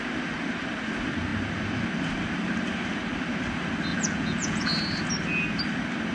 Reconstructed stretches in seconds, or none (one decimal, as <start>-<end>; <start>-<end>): 3.9-4.7